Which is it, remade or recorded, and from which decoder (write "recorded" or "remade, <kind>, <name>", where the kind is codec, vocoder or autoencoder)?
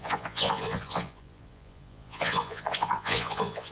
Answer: remade, vocoder, Vocos